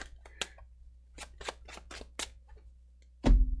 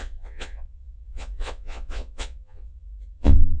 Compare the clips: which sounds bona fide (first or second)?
first